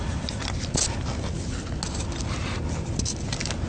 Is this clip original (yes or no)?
yes